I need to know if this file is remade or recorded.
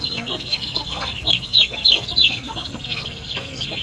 remade